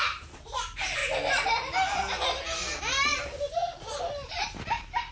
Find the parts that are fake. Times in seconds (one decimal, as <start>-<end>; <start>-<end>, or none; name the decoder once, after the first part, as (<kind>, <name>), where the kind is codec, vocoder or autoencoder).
0.0-1.0 (vocoder, BigVGAN v2); 2.8-3.6; 4.3-5.1